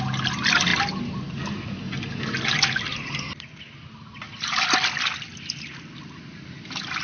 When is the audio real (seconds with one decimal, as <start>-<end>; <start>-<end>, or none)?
0.0-7.0